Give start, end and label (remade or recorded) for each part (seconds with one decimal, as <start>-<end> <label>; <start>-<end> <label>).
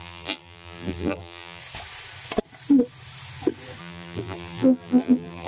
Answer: 0.0-1.6 remade; 1.6-3.8 recorded; 3.8-5.5 remade